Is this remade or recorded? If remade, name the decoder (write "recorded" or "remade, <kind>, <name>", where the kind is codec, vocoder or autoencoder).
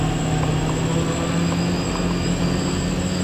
recorded